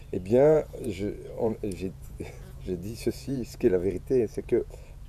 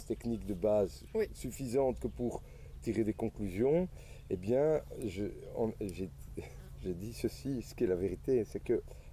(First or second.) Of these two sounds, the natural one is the second